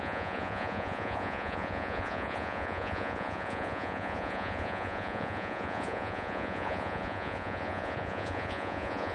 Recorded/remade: remade